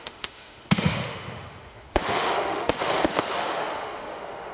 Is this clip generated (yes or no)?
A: yes